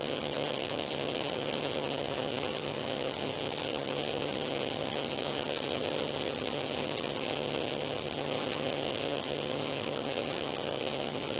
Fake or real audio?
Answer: fake